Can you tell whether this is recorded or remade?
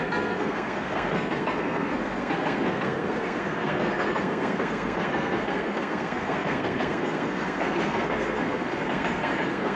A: remade